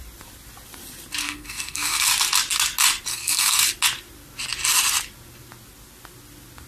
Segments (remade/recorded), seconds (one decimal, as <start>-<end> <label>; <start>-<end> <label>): 0.0-1.2 recorded; 1.2-2.1 remade; 2.1-3.1 recorded; 3.1-3.6 remade; 3.6-6.7 recorded